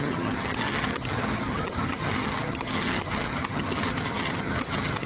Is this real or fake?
fake